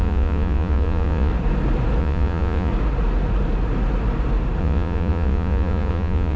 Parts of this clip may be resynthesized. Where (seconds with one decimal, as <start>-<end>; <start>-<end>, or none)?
0.0-1.3; 2.0-2.7; 4.6-6.4